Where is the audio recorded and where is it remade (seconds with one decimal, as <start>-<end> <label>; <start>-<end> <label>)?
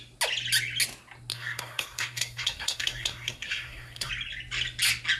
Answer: 0.0-1.3 recorded; 1.3-4.1 remade; 4.1-5.2 recorded